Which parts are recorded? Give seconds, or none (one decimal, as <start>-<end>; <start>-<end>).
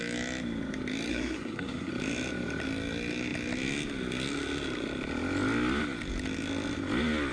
0.0-1.1; 1.9-7.3